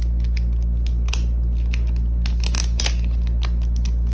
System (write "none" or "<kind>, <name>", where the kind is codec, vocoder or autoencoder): none